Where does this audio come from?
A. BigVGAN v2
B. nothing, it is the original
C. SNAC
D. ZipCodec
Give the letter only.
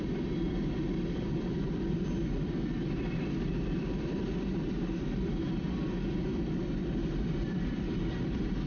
A